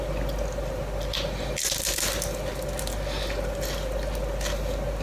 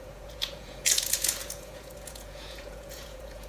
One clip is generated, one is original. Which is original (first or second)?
first